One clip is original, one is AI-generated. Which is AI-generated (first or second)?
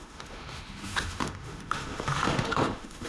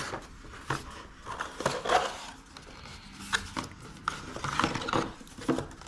first